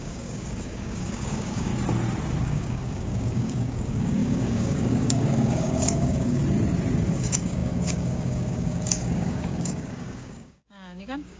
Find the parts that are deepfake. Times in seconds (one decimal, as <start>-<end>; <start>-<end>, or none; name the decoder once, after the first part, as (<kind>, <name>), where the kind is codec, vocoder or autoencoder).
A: 0.0-1.7 (codec, DAC); 2.4-6.4; 7.1-11.4